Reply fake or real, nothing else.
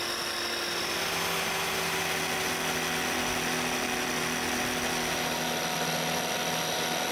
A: real